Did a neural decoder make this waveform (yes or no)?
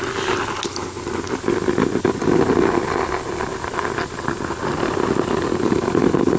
no